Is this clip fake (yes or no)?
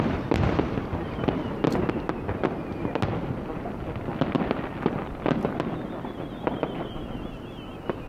no